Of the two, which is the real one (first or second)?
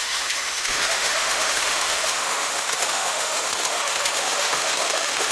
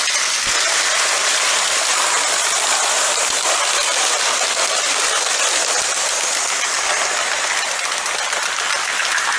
second